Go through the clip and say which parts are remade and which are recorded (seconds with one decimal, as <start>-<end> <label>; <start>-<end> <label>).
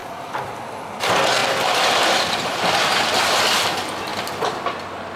0.0-0.6 remade; 0.6-1.4 recorded; 1.4-3.2 remade; 3.2-5.2 recorded